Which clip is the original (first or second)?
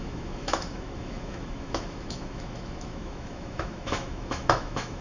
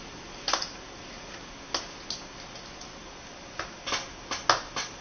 second